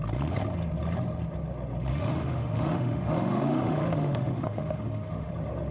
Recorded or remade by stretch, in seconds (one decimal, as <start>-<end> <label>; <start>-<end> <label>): 0.0-1.9 recorded; 1.9-5.3 remade; 5.3-5.7 recorded

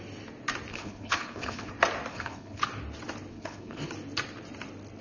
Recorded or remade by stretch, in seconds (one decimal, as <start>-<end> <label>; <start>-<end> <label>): 0.0-0.7 recorded; 0.7-1.7 remade; 1.7-2.1 recorded; 2.1-2.6 remade; 2.6-3.3 recorded; 3.3-3.9 remade; 3.9-5.0 recorded

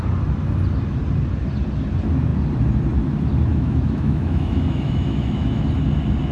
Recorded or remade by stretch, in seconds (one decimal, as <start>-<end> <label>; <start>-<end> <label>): 0.0-3.5 recorded; 3.5-5.6 remade; 5.6-6.3 recorded

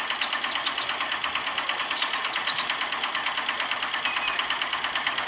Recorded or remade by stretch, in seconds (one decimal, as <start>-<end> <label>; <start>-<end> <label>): 0.0-5.3 recorded